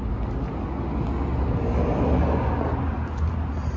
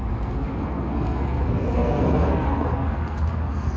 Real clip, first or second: first